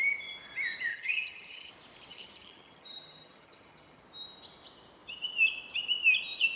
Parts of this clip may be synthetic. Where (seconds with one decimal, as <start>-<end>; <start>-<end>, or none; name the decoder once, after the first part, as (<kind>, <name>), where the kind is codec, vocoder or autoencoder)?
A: 0.9-1.7 (vocoder, HiFi-GAN); 2.1-4.0